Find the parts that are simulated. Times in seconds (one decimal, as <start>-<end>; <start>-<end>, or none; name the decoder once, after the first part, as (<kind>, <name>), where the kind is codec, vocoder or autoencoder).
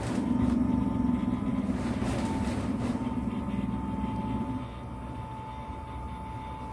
none